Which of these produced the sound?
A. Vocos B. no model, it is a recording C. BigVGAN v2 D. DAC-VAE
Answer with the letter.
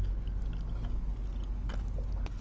B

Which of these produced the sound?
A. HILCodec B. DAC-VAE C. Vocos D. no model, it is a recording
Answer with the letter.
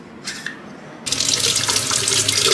D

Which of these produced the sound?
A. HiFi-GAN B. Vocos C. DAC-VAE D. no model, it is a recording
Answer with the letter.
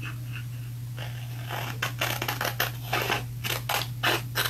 D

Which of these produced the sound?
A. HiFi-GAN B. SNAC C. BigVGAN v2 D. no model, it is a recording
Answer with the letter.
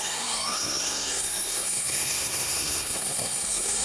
B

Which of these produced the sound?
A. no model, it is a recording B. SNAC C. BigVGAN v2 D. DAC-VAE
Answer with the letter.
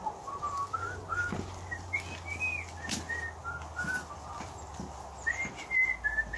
A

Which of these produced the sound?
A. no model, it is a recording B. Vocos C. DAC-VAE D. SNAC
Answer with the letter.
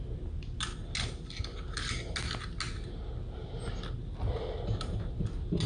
A